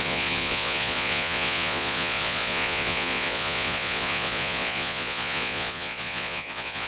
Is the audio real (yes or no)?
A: no